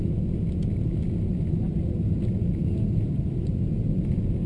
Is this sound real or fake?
real